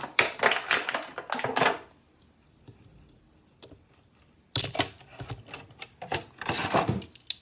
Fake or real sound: real